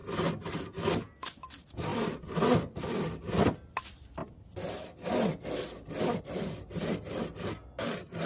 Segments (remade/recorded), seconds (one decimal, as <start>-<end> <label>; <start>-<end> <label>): 0.0-8.3 recorded